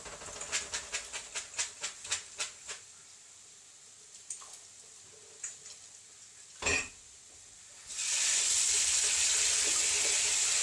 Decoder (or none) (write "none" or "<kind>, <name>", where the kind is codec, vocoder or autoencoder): none